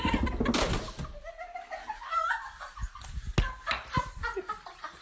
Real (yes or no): yes